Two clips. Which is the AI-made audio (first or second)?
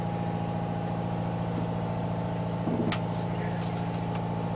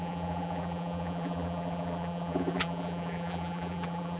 second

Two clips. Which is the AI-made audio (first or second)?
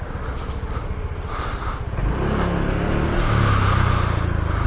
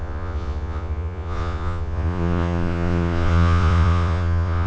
second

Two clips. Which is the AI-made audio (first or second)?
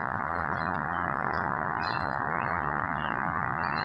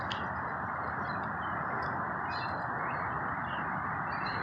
first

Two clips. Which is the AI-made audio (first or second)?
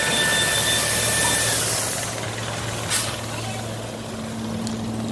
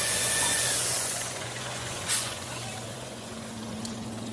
second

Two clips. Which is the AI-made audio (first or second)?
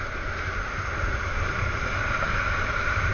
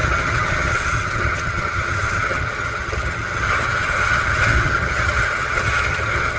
second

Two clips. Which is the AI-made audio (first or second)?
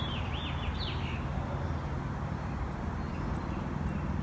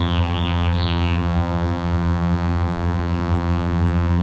second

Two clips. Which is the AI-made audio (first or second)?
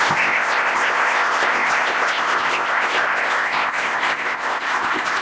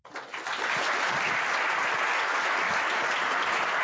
first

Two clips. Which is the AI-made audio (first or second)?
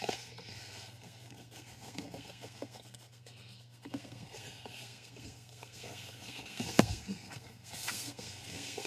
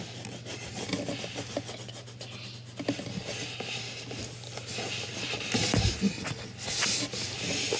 first